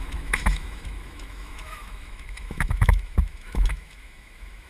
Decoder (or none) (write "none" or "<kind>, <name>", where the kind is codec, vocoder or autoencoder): autoencoder, DAC-VAE